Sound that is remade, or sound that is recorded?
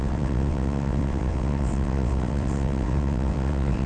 remade